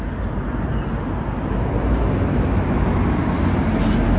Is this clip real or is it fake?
real